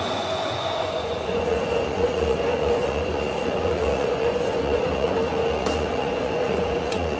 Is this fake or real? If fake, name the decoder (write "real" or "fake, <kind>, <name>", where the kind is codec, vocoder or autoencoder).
fake, vocoder, Vocos